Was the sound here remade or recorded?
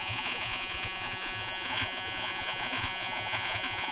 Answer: remade